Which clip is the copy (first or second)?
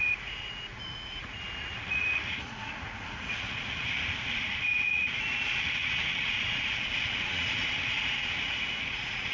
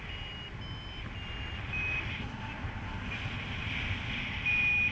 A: first